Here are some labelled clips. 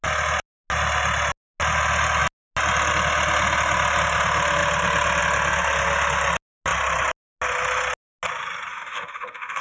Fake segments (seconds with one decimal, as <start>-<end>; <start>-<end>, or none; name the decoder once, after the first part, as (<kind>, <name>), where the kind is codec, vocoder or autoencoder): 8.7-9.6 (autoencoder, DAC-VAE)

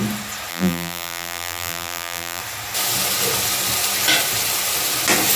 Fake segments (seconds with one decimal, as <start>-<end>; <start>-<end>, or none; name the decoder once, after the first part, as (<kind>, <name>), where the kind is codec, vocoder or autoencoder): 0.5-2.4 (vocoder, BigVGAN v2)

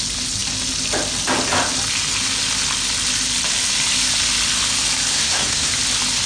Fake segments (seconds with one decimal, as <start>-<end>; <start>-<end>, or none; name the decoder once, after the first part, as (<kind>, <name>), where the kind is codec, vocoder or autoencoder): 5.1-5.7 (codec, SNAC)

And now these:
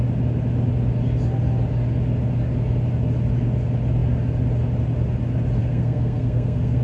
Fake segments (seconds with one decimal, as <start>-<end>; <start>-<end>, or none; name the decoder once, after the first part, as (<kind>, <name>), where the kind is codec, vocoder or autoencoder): 5.6-6.8 (codec, SNAC)